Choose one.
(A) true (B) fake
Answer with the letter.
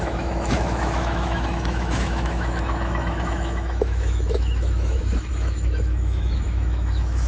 B